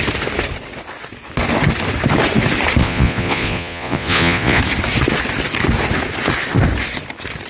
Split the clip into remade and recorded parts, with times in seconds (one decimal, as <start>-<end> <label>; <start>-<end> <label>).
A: 0.0-2.8 recorded; 2.8-4.6 remade; 4.6-7.5 recorded